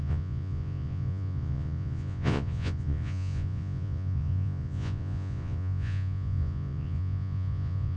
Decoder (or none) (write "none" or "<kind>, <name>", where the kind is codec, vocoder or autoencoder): vocoder, Vocos